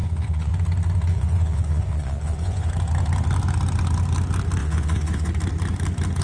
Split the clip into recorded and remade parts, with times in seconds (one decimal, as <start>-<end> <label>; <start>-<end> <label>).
0.0-0.5 remade; 0.5-1.1 recorded; 1.1-2.7 remade; 2.7-4.6 recorded; 4.6-5.3 remade; 5.3-6.2 recorded